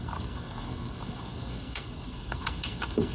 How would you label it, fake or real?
fake